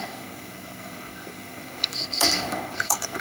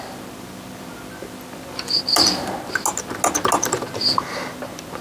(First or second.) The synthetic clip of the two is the first